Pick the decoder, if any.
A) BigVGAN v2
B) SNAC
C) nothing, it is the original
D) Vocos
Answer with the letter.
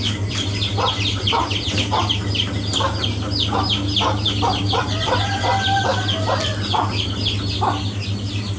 A